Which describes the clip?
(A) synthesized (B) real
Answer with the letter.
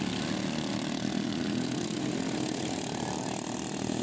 B